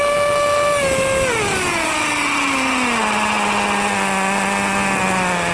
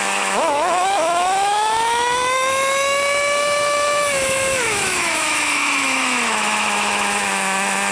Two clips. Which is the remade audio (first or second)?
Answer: second